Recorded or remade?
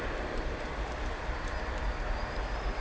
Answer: remade